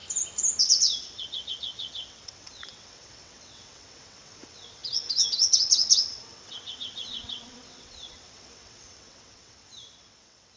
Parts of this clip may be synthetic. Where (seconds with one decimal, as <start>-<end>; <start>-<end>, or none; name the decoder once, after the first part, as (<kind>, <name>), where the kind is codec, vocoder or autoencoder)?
0.6-10.6 (vocoder, WaveNeXt)